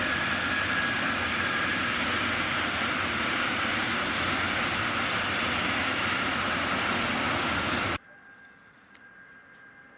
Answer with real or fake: real